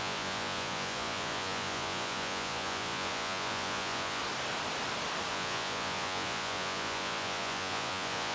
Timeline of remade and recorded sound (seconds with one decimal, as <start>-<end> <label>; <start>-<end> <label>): 0.0-4.2 remade; 4.2-5.3 recorded; 5.3-8.3 remade